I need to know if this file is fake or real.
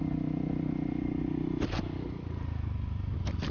real